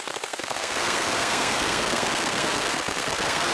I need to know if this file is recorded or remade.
remade